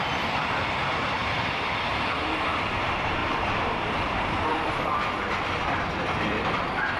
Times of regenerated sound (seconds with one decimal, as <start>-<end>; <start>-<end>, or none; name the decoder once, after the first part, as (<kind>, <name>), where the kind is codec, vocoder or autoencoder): 0.0-7.0 (vocoder, BigVGAN v2)